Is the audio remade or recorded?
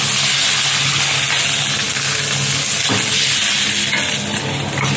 recorded